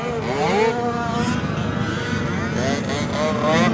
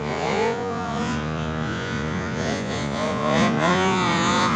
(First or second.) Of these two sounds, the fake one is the second